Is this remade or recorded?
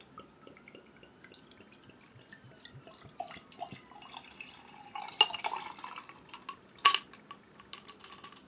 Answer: recorded